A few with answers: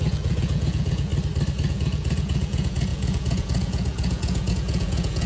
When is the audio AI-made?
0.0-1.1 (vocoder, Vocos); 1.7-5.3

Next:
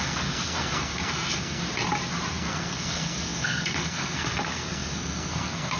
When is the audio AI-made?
0.0-1.6 (codec, SNAC); 2.3-5.8

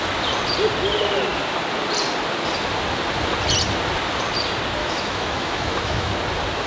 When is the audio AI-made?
4.8-6.1 (autoencoder, DAC-VAE)

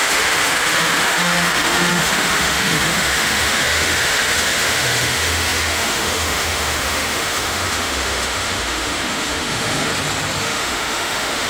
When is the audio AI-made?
0.0-9.9 (autoencoder, DAC-VAE); 10.4-11.5

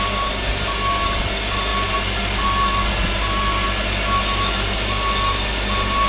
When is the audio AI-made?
none

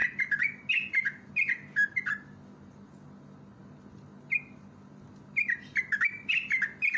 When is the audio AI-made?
none

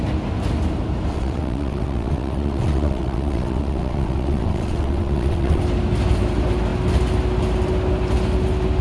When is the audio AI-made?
1.1-5.6 (vocoder, WaveNeXt)

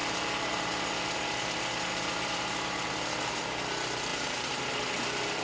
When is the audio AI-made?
4.1-4.6 (vocoder, BigVGAN v2)